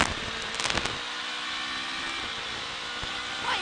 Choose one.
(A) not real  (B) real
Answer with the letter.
B